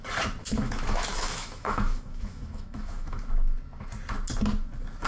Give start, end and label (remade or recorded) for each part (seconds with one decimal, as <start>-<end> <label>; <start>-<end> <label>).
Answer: 0.0-0.4 recorded; 0.4-3.2 remade; 3.2-5.1 recorded